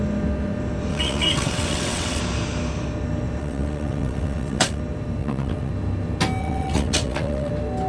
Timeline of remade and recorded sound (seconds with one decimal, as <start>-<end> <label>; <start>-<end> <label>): 0.0-0.9 recorded; 0.9-2.2 remade; 2.2-3.4 recorded; 3.4-4.8 remade; 4.8-5.2 recorded; 5.2-5.7 remade; 5.7-6.4 recorded; 6.4-7.5 remade; 7.5-7.9 recorded